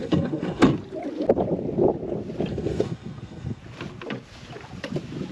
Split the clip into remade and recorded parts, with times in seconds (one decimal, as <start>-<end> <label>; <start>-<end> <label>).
0.0-0.7 remade; 0.7-2.5 recorded; 2.5-3.6 remade; 3.6-5.3 recorded